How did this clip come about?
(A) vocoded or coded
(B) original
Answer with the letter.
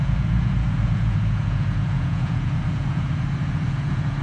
A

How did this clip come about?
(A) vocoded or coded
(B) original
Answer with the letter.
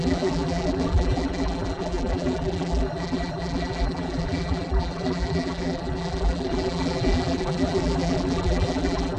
A